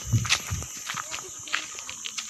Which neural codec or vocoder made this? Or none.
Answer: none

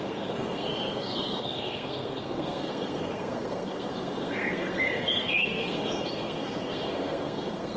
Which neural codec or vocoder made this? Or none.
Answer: codec, SNAC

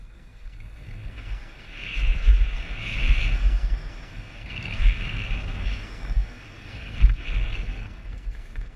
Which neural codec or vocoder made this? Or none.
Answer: codec, SNAC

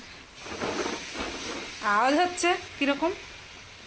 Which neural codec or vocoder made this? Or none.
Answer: none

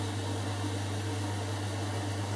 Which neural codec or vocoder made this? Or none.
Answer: none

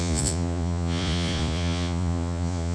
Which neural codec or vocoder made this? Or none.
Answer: vocoder, Vocos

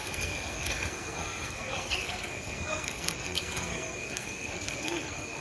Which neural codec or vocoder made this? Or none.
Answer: codec, SNAC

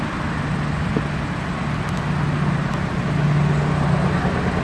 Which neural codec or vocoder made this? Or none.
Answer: none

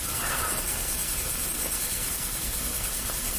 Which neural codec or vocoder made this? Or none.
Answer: codec, SNAC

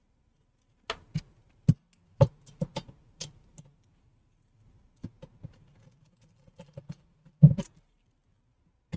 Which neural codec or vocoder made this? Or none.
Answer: none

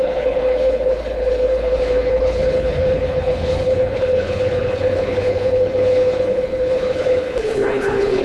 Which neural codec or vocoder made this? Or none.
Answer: codec, HILCodec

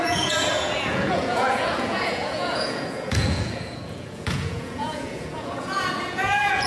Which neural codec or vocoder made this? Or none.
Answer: vocoder, Vocos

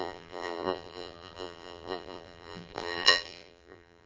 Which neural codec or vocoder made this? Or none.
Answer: vocoder, BigVGAN v2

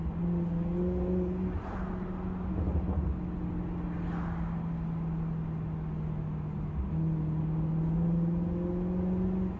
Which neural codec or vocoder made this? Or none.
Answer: none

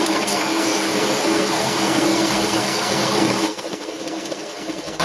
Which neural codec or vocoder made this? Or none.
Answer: codec, SNAC